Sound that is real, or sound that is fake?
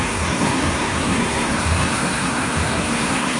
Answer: fake